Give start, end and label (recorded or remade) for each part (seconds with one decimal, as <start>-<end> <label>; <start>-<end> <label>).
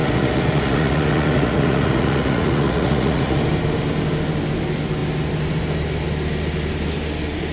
0.0-3.4 remade; 3.4-7.5 recorded